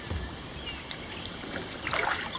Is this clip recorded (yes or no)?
yes